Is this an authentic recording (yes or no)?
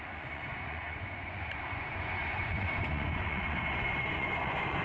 no